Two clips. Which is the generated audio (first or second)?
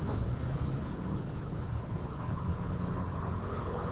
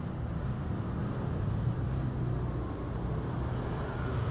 first